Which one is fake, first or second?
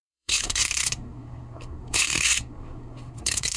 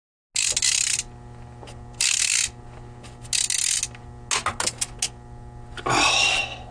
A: first